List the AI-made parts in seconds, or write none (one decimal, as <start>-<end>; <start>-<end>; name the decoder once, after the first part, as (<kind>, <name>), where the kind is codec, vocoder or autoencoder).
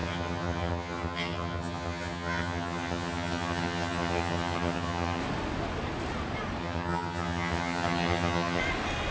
0.0-5.2 (vocoder, HiFi-GAN); 6.6-8.6